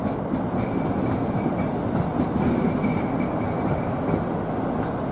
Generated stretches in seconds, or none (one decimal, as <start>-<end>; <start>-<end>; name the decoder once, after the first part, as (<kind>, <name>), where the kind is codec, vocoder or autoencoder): none